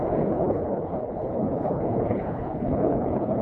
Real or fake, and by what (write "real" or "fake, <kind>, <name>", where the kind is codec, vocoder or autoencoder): fake, codec, HILCodec